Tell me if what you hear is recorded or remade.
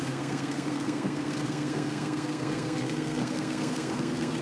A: remade